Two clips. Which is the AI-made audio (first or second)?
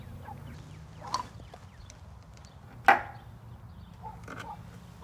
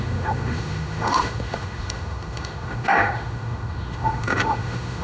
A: second